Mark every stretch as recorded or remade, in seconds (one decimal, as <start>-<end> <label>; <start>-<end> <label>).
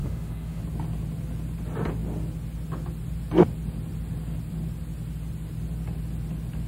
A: 0.0-0.6 remade; 0.6-6.7 recorded